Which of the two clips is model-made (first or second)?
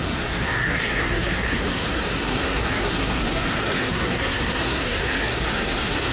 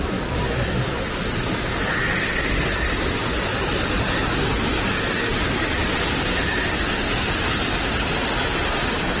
first